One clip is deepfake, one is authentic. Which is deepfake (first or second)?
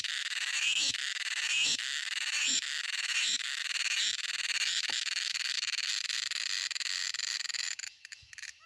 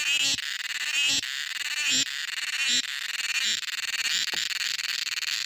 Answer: first